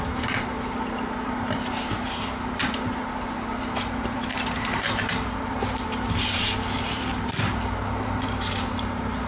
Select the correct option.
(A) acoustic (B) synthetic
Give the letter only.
B